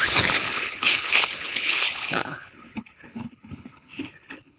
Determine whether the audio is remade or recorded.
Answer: remade